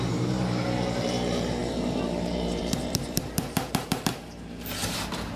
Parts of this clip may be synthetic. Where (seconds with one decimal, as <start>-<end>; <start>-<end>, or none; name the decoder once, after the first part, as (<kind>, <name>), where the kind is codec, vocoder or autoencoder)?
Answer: 0.0-5.4 (vocoder, BigVGAN v2)